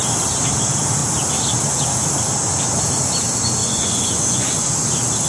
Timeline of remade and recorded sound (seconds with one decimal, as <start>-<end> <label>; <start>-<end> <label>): 0.0-3.6 recorded; 3.6-4.7 remade; 4.7-5.3 recorded